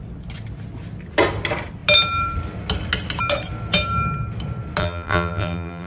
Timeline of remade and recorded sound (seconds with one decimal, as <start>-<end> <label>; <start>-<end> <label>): 0.0-4.8 recorded; 4.8-5.9 remade